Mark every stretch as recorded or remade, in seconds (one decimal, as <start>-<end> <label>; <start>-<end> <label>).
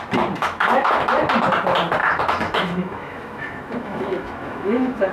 0.0-0.4 recorded; 0.4-1.2 remade; 1.2-2.0 recorded; 2.0-5.1 remade